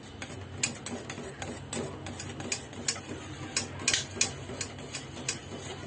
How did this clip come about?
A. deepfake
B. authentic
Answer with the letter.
B